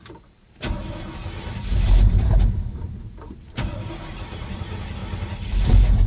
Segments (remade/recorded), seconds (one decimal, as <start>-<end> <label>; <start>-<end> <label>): 0.0-0.8 remade; 0.8-2.1 recorded; 2.1-5.0 remade; 5.0-6.1 recorded